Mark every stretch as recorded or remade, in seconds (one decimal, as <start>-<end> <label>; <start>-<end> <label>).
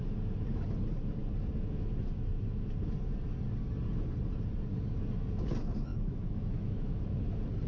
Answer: 0.0-5.9 recorded; 5.9-7.0 remade; 7.0-7.7 recorded